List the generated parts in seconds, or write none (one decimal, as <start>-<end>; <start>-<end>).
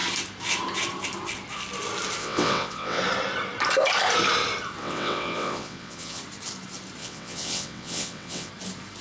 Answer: 2.2-3.0; 4.8-6.2; 7.0-8.5